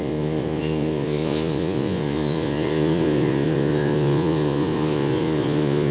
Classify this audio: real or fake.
fake